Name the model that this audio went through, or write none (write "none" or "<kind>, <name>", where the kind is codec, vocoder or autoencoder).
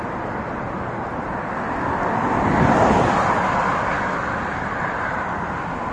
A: none